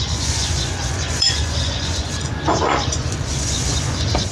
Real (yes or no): no